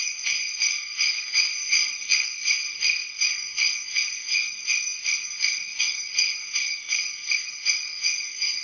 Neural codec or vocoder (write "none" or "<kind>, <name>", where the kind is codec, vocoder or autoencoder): codec, SNAC